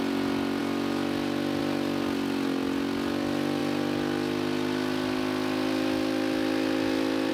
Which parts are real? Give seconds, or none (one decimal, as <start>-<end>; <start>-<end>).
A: 0.0-7.3